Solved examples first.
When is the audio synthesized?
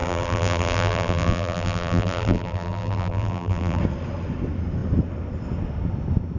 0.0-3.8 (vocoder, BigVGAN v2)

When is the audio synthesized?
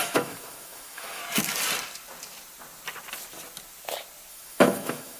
0.0-1.2 (autoencoder, DAC-VAE); 4.3-5.2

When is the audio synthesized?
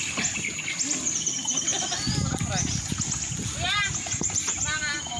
none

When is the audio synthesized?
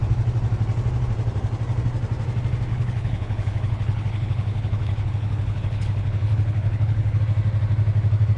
2.7-7.2 (codec, HILCodec)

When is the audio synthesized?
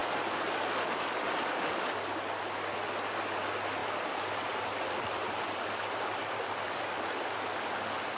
0.0-1.7 (vocoder, BigVGAN v2); 3.8-7.7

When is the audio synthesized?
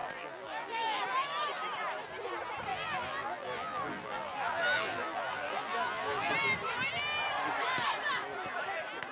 0.0-1.0 (vocoder, BigVGAN v2); 2.7-6.3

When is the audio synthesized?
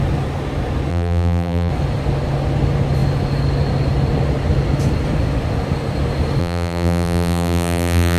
0.9-1.7 (vocoder, BigVGAN v2); 6.4-8.2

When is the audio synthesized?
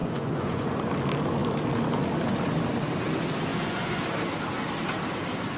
0.0-0.9 (vocoder, Vocos); 3.5-4.0